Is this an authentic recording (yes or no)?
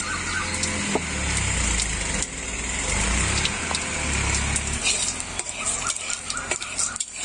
yes